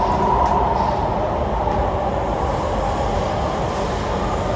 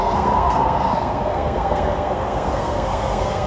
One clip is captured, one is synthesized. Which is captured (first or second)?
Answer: first